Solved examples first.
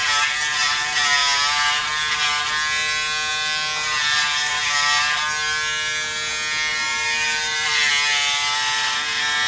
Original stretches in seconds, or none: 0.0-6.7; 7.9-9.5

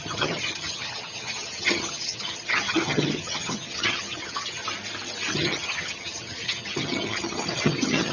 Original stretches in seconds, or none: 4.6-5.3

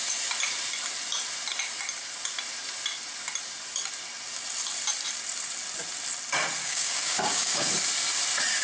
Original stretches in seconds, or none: 0.0-6.6; 7.7-8.6

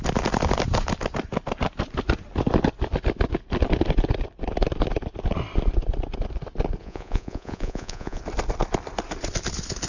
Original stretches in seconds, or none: 0.0-6.8; 8.2-9.9

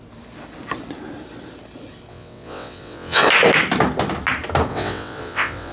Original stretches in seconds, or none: 0.0-2.1; 3.3-4.7

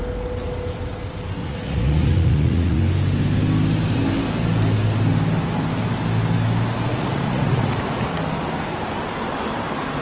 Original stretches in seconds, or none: 0.0-1.4; 2.8-6.9; 7.8-10.0

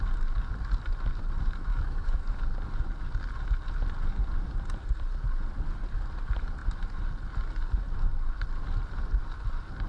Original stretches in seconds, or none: 0.0-1.7; 2.4-9.9

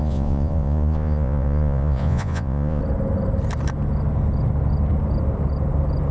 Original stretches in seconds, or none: 2.8-6.1